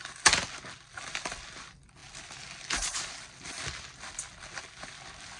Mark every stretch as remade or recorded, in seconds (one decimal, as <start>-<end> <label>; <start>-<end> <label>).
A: 0.0-5.4 recorded